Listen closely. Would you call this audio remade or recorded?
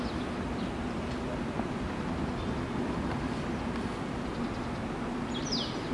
recorded